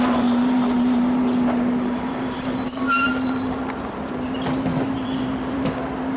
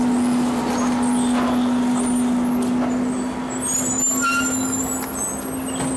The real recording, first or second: second